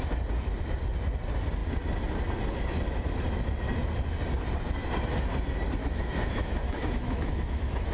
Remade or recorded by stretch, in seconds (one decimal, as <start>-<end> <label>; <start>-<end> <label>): 0.0-5.8 recorded; 5.8-7.9 remade